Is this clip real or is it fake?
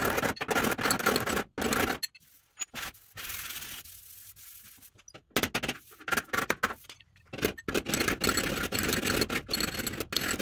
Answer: real